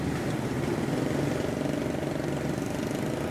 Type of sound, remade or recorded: recorded